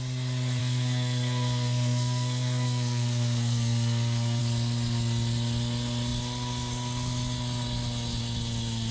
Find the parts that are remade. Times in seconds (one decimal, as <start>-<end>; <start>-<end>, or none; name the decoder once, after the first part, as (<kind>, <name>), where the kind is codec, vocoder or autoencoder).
0.6-4.4 (codec, SNAC)

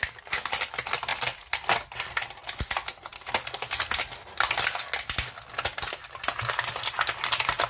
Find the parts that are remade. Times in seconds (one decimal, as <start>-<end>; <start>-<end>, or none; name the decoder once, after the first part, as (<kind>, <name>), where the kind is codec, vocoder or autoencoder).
none

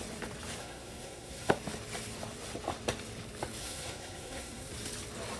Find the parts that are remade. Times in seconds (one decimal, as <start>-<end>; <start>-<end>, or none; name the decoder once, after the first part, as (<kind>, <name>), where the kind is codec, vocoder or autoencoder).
0.6-1.5 (codec, SNAC); 3.6-4.7

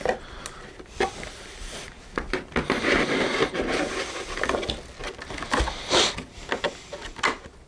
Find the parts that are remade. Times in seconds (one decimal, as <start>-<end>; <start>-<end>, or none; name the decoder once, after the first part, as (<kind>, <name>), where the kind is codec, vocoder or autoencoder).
none

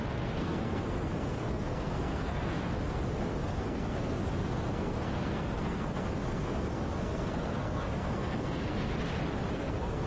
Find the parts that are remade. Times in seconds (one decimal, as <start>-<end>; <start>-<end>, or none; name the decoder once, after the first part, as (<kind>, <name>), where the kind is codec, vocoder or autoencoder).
0.0-8.9 (codec, SNAC); 9.5-10.1

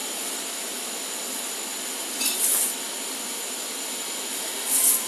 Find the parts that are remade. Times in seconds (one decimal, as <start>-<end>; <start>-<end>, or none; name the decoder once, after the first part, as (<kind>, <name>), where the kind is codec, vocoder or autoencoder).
none